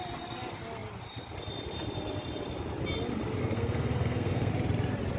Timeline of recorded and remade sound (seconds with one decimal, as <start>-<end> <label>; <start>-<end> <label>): 0.0-3.4 recorded; 3.4-4.5 remade; 4.5-5.2 recorded